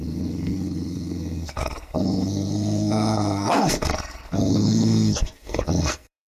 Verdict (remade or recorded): remade